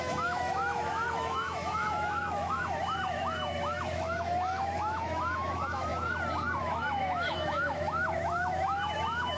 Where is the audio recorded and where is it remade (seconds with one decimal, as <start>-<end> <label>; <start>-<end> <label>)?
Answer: 0.0-5.9 remade; 5.9-6.6 recorded; 6.6-9.4 remade